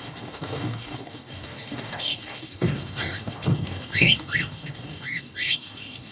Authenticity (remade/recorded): remade